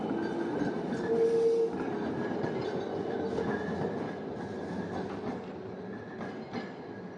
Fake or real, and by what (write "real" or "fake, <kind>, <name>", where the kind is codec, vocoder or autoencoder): real